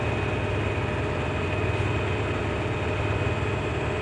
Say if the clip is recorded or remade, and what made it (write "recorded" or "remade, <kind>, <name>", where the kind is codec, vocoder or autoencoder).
recorded